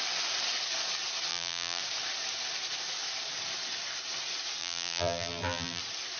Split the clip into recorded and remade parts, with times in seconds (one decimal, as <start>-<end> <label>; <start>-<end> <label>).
0.0-1.3 recorded; 1.3-1.8 remade; 1.8-4.6 recorded; 4.6-5.8 remade; 5.8-6.2 recorded